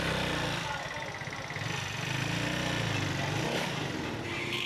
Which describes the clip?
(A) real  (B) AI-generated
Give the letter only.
A